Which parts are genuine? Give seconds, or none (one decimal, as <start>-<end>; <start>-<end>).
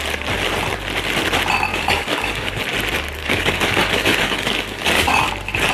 0.0-1.7; 2.6-3.2; 5.3-5.7